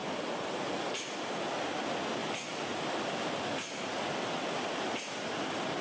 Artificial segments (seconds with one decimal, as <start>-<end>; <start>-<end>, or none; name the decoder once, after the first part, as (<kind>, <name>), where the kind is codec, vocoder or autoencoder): none